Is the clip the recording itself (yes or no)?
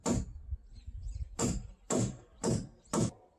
no